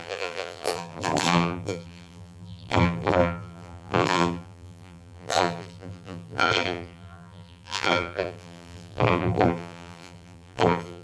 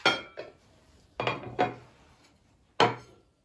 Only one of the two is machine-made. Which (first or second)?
first